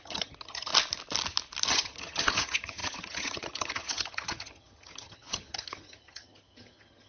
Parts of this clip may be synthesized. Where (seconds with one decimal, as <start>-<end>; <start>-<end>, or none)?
0.0-0.7; 1.7-7.1